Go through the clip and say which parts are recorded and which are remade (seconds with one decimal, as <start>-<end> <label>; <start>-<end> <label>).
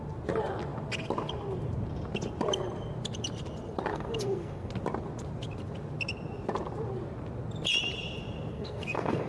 0.0-3.9 recorded; 3.9-4.7 remade; 4.7-8.5 recorded; 8.5-9.3 remade